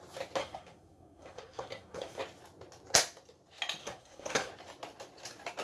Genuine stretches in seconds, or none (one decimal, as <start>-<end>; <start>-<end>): 0.0-0.4; 2.2-3.8; 4.5-5.6